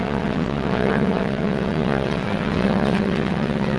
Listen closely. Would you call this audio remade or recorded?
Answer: remade